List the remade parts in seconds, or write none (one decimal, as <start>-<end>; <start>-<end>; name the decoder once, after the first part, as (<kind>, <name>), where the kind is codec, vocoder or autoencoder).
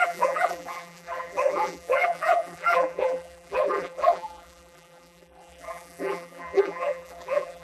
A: 0.0-7.6 (vocoder, BigVGAN v2)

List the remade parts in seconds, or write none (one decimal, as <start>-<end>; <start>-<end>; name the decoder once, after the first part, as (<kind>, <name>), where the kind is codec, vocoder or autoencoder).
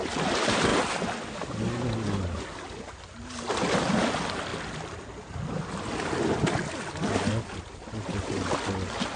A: none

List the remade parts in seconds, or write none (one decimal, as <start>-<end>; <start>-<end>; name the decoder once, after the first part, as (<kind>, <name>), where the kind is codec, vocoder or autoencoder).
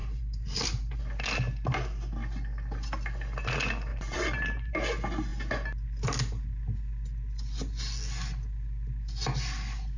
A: 0.0-1.0 (vocoder, BigVGAN v2); 3.9-4.7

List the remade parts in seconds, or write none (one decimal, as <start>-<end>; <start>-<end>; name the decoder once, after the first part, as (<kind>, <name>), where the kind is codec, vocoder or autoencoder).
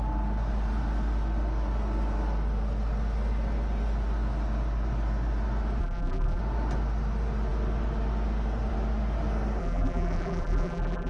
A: 5.8-6.4 (vocoder, BigVGAN v2); 9.6-11.1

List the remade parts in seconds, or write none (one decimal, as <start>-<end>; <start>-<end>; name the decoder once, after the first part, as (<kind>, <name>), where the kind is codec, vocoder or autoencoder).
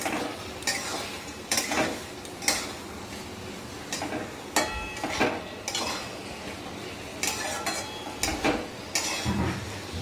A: none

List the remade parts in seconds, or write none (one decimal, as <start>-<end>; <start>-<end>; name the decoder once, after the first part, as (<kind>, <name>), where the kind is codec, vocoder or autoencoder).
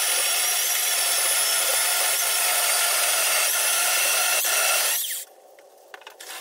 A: none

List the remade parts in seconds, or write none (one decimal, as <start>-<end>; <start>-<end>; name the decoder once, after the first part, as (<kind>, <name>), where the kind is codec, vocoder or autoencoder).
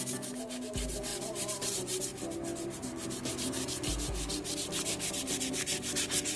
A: 1.1-1.7 (vocoder, BigVGAN v2)